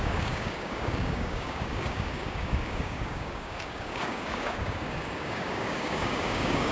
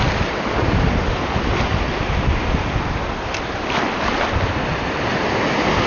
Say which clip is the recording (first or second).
second